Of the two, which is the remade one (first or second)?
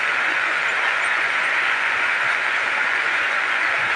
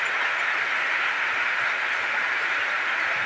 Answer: first